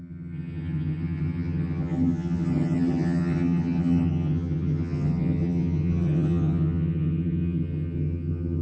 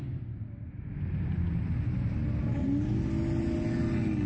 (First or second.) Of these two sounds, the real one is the second